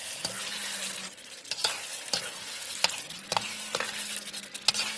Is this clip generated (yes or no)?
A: no